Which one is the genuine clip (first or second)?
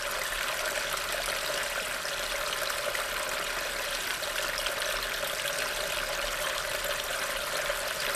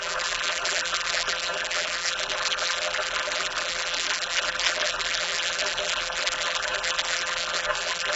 first